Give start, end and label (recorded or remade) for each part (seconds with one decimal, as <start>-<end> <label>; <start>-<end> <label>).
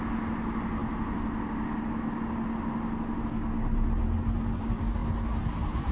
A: 0.0-5.9 recorded